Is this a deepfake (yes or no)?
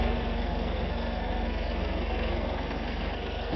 yes